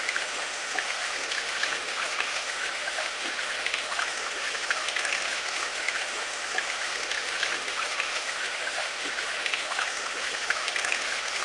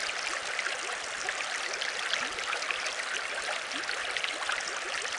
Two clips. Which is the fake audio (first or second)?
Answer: first